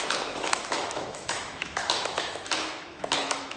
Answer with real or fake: fake